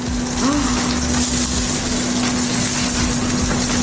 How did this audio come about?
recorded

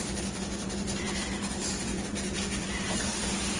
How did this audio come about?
remade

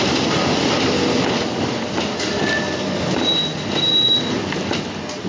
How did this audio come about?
recorded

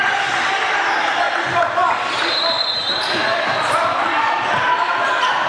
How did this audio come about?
remade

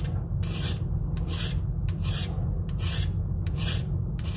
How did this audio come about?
recorded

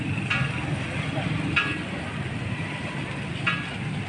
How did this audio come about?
recorded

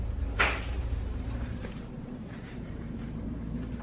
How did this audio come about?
remade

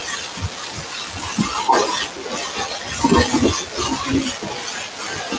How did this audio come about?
recorded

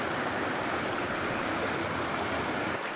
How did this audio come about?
recorded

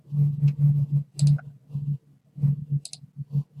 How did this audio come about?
recorded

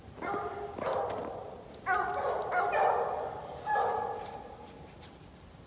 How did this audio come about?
recorded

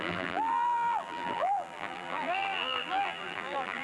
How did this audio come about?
remade